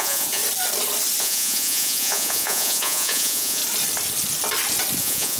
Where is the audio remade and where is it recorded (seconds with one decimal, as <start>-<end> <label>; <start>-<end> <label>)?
0.0-0.4 remade; 0.4-1.2 recorded; 1.2-3.6 remade; 3.6-5.0 recorded; 5.0-5.4 remade

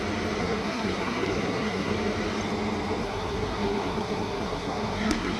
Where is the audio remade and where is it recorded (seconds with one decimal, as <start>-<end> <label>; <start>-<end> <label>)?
0.0-0.4 recorded; 0.4-1.9 remade; 1.9-3.0 recorded; 3.0-5.4 remade

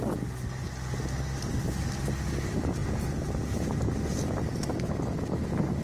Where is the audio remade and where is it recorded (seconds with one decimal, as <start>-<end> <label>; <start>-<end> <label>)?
0.0-5.8 recorded

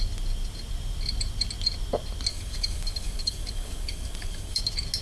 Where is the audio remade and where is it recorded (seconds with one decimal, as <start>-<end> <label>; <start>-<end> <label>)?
0.0-2.3 recorded; 2.3-4.6 remade; 4.6-5.0 recorded

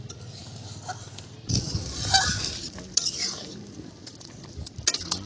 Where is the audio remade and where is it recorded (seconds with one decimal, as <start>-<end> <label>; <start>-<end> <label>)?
0.0-5.3 recorded

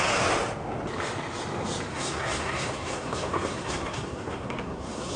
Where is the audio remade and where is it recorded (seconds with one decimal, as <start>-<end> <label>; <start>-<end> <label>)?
0.0-1.9 recorded; 1.9-5.2 remade

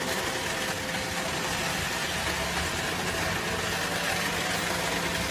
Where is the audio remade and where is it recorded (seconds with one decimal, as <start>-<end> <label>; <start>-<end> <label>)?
0.0-5.3 recorded

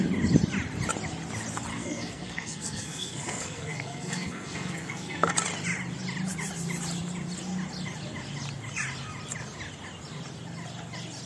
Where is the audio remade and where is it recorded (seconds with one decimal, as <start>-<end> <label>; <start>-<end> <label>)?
0.0-1.7 recorded; 1.7-5.3 remade; 5.3-11.3 recorded